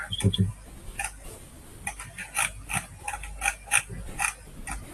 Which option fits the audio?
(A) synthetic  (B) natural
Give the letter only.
B